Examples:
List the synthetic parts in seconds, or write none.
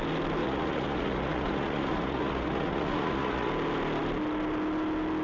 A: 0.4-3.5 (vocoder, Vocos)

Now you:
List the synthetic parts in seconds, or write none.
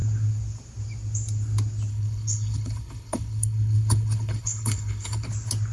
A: 1.9-5.3 (codec, HILCodec)